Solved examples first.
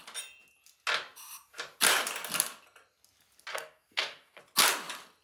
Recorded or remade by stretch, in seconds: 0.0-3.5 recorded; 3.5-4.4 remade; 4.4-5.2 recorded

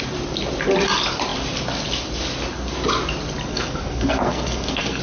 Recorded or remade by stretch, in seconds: 0.0-3.5 recorded; 3.5-5.0 remade

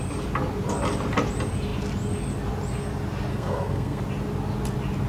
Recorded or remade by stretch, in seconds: 0.0-3.3 recorded; 3.3-4.0 remade; 4.0-5.1 recorded

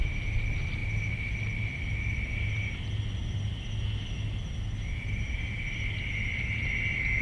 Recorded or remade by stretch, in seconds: 0.0-7.2 recorded

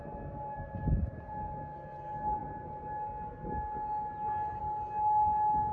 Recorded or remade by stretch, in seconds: 0.0-5.7 recorded

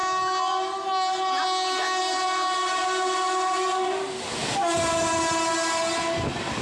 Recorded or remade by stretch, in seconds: 0.0-6.6 recorded

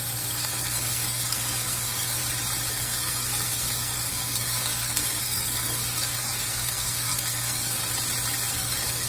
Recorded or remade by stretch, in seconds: 0.0-2.2 remade; 2.2-2.7 recorded; 2.7-7.8 remade; 7.8-8.5 recorded; 8.5-9.1 remade

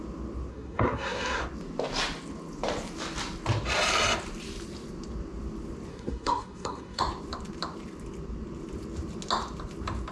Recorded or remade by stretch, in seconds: 0.0-0.5 recorded; 0.5-1.4 remade; 1.4-5.9 recorded; 5.9-7.0 remade; 7.0-10.1 recorded